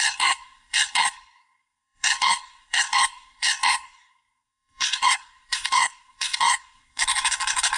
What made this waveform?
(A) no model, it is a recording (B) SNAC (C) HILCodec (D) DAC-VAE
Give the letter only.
B